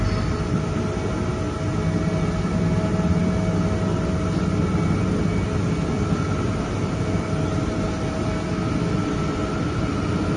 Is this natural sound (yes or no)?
yes